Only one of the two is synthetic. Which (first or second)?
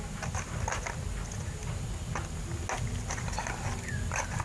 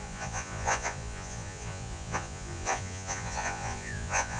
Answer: second